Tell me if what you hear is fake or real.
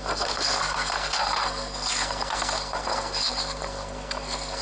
fake